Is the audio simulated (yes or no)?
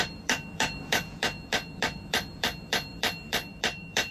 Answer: yes